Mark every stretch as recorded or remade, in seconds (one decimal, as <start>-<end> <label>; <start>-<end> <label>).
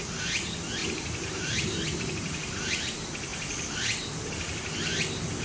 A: 0.0-0.8 recorded; 0.8-2.7 remade; 2.7-5.4 recorded